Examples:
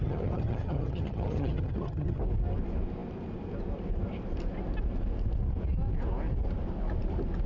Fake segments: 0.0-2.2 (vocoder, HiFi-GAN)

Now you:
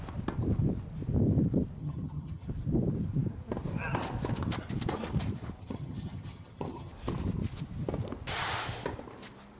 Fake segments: 1.8-2.5 (vocoder, HiFi-GAN); 5.6-6.9

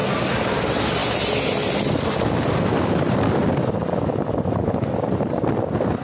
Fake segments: none

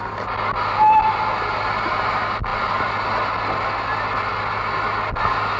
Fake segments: none

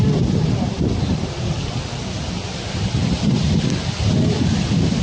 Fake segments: none